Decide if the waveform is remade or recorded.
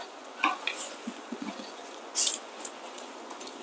remade